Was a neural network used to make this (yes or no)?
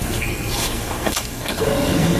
yes